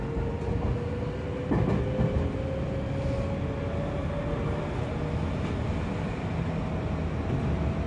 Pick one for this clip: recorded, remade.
recorded